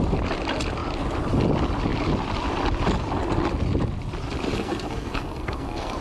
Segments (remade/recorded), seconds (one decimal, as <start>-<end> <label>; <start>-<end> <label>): 0.0-4.5 recorded; 4.5-6.0 remade